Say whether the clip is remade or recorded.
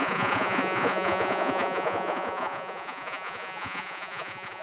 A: remade